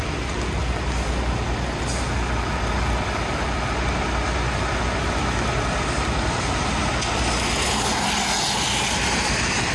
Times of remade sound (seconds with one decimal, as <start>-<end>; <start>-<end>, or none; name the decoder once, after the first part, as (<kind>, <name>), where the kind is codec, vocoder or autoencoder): none